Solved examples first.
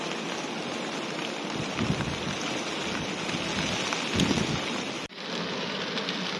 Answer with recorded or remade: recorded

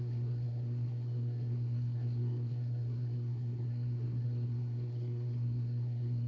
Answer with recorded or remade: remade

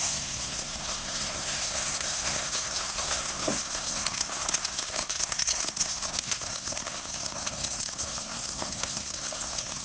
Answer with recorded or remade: remade